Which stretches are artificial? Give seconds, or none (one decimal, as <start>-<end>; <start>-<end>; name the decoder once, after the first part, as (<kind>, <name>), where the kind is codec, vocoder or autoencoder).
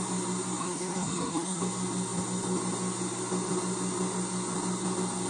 0.6-1.6 (codec, SNAC)